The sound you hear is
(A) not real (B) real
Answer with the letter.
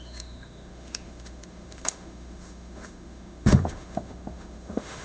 A